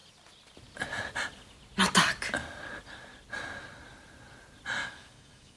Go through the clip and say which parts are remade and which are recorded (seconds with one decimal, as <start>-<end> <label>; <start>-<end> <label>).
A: 0.0-4.8 recorded; 4.8-5.6 remade